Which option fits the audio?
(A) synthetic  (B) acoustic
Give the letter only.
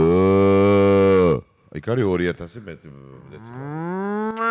B